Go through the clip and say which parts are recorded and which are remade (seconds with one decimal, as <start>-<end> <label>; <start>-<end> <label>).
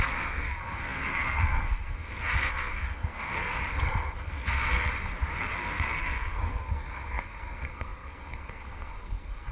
0.0-3.5 remade; 3.5-4.2 recorded; 4.2-4.9 remade; 4.9-5.4 recorded; 5.4-9.5 remade